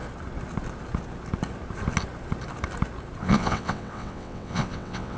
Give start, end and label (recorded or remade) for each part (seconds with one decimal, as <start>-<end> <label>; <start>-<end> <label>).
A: 0.0-3.2 recorded; 3.2-5.2 remade